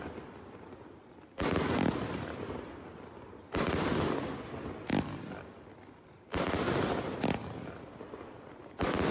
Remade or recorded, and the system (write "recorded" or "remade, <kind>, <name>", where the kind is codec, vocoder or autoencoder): recorded